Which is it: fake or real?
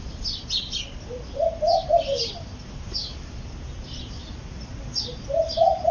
real